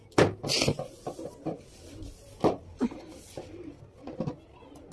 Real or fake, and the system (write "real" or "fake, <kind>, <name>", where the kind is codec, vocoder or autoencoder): real